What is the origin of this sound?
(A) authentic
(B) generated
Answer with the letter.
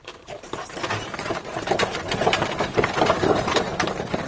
B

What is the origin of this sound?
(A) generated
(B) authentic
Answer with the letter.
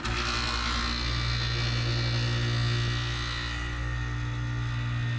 B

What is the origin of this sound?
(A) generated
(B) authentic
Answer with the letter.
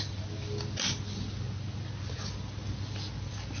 B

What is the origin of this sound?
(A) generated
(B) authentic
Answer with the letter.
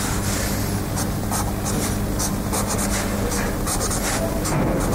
B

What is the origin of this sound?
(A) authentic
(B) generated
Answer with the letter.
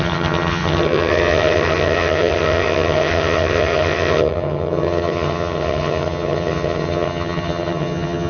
B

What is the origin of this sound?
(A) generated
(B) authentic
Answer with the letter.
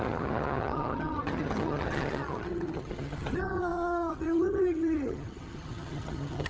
A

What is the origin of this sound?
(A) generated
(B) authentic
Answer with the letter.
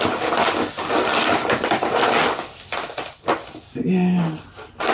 B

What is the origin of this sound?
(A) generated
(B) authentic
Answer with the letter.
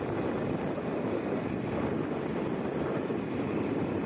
B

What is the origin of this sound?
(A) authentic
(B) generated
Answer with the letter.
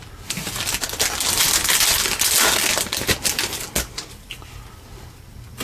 A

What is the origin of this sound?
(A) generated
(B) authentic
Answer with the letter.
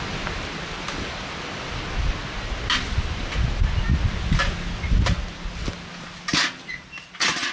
B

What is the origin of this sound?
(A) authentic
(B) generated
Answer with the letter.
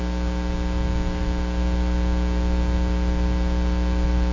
A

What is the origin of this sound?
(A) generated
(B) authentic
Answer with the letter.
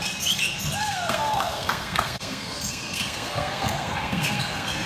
A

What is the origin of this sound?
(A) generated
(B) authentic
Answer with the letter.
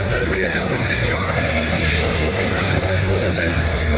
A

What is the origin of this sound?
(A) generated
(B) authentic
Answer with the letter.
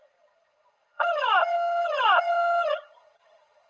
A